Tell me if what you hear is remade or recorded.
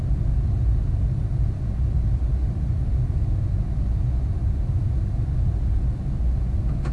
recorded